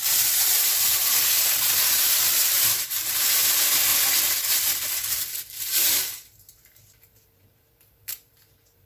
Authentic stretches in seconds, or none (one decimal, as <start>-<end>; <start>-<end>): 3.9-5.4